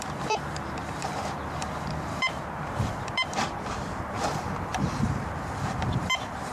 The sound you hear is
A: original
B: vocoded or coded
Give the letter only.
B